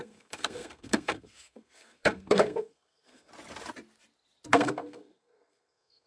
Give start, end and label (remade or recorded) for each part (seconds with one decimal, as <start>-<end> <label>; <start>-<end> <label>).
0.0-3.3 remade; 3.3-4.5 recorded; 4.5-6.1 remade